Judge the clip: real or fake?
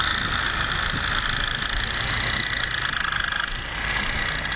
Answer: real